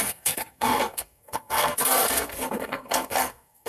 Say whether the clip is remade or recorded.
remade